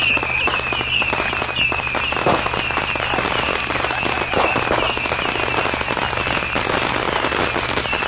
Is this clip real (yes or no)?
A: yes